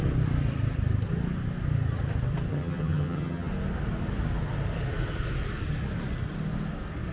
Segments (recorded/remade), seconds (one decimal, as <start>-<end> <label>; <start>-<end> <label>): 0.0-2.5 recorded; 2.5-3.5 remade; 3.5-7.1 recorded

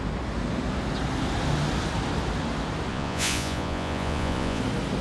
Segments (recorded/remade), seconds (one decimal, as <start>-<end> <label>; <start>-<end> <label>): 0.0-2.9 recorded; 2.9-4.6 remade; 4.6-5.0 recorded

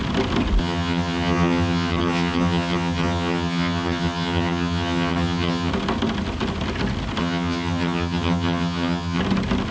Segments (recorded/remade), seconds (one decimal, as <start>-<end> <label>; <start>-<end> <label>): 0.0-0.6 recorded; 0.6-5.7 remade; 5.7-7.2 recorded; 7.2-9.2 remade; 9.2-9.7 recorded

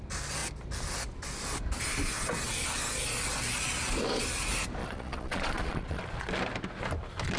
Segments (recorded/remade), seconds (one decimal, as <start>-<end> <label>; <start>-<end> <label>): 0.0-4.8 recorded; 4.8-6.0 remade; 6.0-7.4 recorded

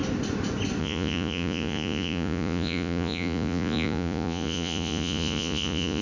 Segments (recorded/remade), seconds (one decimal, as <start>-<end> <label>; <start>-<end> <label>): 0.0-0.8 recorded; 0.8-6.0 remade